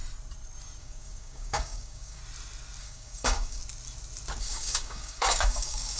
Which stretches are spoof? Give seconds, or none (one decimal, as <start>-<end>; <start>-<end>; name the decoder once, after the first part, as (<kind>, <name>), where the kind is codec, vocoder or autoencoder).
0.8-2.2 (codec, DAC); 2.8-3.6; 4.4-6.0